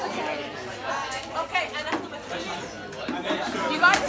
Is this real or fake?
real